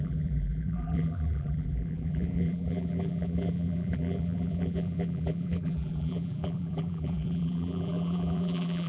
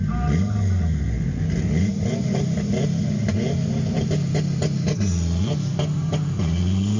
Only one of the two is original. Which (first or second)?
second